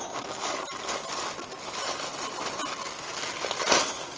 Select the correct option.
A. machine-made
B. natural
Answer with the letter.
B